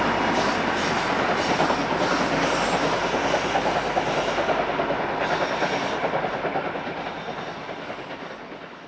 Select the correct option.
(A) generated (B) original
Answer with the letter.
B